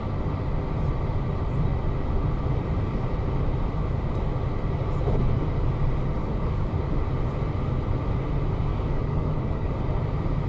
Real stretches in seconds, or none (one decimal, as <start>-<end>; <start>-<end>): 0.0-6.2; 6.8-8.7; 9.7-10.5